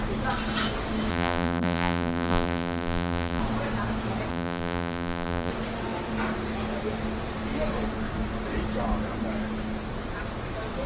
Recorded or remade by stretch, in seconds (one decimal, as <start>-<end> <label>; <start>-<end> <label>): 0.0-1.1 recorded; 1.1-3.4 remade; 3.4-4.3 recorded; 4.3-5.5 remade; 5.5-10.9 recorded